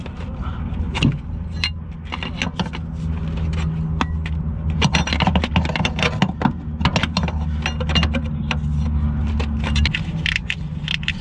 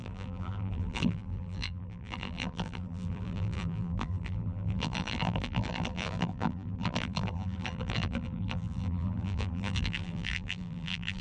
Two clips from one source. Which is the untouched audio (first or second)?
first